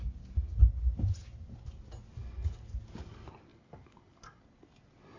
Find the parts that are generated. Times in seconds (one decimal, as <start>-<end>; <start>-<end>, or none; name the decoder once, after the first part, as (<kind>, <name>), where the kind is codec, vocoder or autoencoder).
3.5-4.4 (codec, DAC)